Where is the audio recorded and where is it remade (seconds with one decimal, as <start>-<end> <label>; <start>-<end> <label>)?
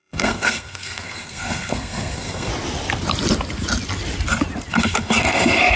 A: 0.0-2.5 remade; 2.5-4.7 recorded; 4.7-5.8 remade